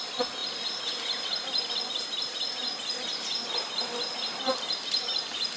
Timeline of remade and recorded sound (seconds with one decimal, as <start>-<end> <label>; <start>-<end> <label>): 0.0-5.6 recorded